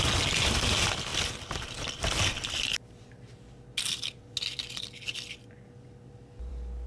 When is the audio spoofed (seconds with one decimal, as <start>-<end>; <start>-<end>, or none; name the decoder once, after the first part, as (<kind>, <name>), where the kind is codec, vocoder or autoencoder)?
none